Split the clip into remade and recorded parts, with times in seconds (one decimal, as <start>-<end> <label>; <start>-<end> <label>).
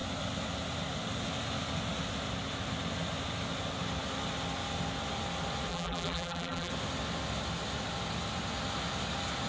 0.0-5.7 recorded; 5.7-6.7 remade; 6.7-9.5 recorded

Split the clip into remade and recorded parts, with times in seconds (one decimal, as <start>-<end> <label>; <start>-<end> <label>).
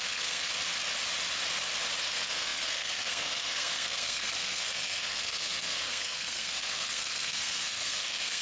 0.0-0.5 remade; 0.5-2.0 recorded; 2.0-8.4 remade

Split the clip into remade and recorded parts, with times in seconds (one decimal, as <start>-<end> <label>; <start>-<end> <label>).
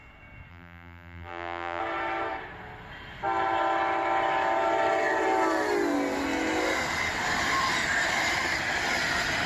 0.0-0.5 recorded; 0.5-1.8 remade; 1.8-9.5 recorded